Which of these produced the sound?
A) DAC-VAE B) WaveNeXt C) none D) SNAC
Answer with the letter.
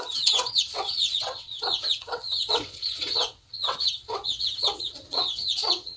B